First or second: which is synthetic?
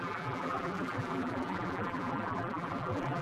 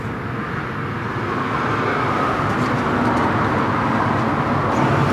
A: first